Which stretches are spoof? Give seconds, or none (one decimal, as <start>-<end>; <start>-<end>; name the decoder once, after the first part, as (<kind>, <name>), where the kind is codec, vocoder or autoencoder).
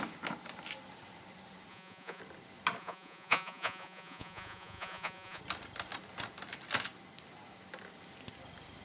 1.7-2.2 (vocoder, Vocos); 2.8-5.4